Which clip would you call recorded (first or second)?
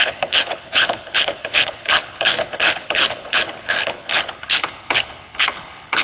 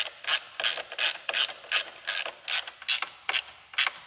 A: second